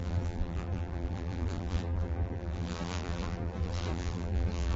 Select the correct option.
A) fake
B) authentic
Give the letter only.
A